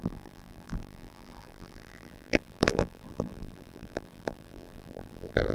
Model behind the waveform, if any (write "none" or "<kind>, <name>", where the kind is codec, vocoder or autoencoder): vocoder, BigVGAN v2